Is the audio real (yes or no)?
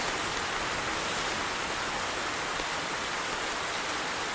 yes